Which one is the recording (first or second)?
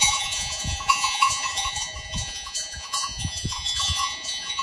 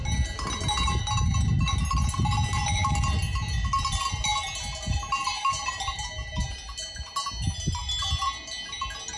second